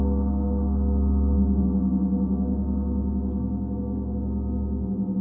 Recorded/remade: recorded